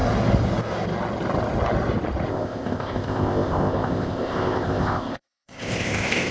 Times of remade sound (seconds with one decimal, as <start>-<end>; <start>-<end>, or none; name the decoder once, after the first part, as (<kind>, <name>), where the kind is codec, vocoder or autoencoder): 2.3-6.3 (codec, ZipCodec)